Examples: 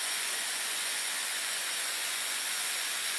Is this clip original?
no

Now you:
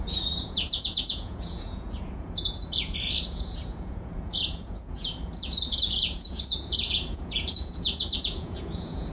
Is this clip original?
no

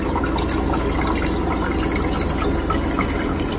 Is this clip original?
yes